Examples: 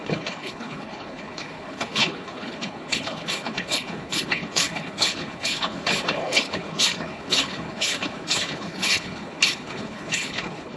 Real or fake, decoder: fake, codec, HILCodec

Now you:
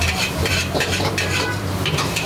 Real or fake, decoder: fake, vocoder, BigVGAN v2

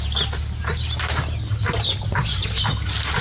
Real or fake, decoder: real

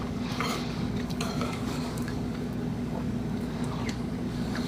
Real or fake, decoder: fake, codec, DAC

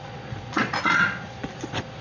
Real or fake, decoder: fake, vocoder, Vocos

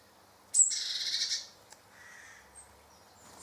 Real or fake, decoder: real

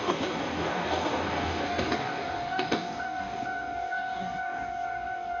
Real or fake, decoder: fake, codec, DAC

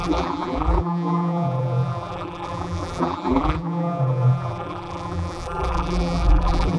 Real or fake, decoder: fake, vocoder, BigVGAN v2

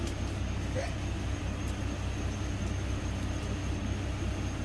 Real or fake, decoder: real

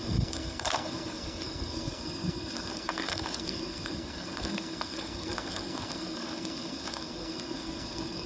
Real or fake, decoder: fake, codec, SNAC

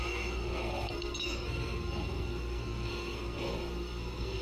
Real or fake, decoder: fake, codec, SNAC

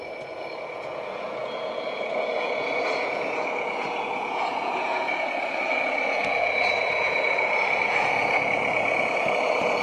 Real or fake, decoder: fake, vocoder, Vocos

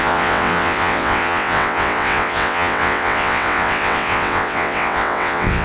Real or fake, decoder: fake, vocoder, WaveNeXt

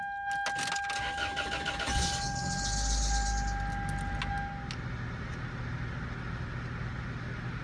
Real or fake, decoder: real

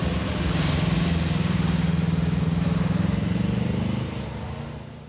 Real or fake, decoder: real